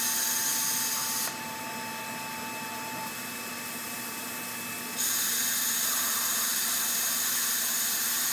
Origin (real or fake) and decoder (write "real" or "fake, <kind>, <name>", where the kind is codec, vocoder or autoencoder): real